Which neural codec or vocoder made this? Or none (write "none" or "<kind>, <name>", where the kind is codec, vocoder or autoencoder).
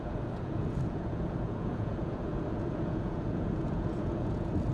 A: vocoder, Vocos